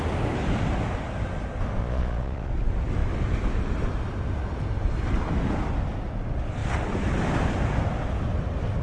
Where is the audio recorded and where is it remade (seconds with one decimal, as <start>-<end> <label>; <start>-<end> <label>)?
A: 0.0-1.8 recorded; 1.8-2.5 remade; 2.5-8.8 recorded